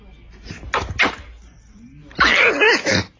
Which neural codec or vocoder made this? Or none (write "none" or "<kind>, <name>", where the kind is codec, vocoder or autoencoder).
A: none